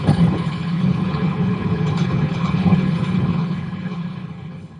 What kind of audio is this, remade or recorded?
remade